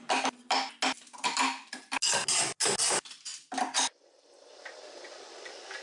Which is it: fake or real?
real